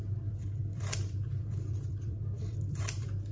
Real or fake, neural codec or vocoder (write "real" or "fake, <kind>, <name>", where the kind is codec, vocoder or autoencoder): fake, vocoder, BigVGAN v2